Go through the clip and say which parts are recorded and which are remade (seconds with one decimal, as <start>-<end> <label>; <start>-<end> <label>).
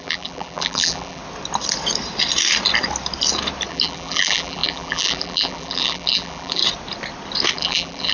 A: 0.0-1.2 remade; 1.2-3.7 recorded; 3.7-6.6 remade; 6.6-7.5 recorded; 7.5-8.1 remade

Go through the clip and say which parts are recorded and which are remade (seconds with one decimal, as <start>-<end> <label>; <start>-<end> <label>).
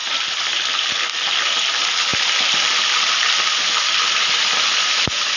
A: 0.0-0.7 remade; 0.7-2.1 recorded; 2.1-5.0 remade; 5.0-5.4 recorded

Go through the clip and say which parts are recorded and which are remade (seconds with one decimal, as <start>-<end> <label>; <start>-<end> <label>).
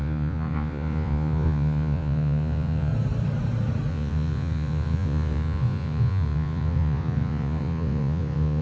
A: 0.0-2.9 remade; 2.9-3.9 recorded; 3.9-8.6 remade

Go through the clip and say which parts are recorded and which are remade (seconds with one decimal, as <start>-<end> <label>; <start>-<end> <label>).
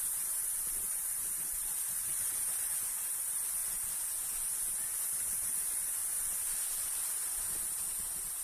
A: 0.0-3.6 remade; 3.6-5.3 recorded; 5.3-6.0 remade; 6.0-7.6 recorded; 7.6-8.4 remade